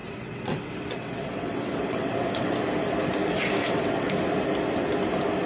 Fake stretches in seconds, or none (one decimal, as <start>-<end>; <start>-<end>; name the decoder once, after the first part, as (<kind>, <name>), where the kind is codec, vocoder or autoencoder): 0.0-2.6 (vocoder, WaveNeXt); 3.6-4.1

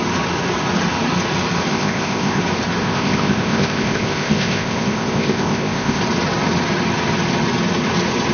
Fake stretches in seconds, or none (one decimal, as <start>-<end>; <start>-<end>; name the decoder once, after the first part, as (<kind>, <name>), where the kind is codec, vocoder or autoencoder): 1.7-2.4 (codec, ZipCodec); 2.8-6.0

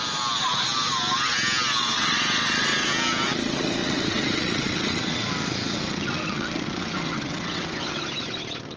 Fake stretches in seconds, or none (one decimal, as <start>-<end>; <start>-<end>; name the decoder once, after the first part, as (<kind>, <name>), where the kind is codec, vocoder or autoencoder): 1.8-2.9 (vocoder, WaveNeXt); 3.8-5.3; 6.0-8.0